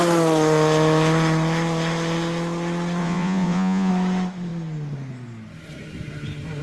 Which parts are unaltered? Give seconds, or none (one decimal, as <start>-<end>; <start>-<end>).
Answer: 0.0-3.0; 3.9-6.6